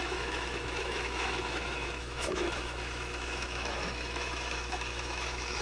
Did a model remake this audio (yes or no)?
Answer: yes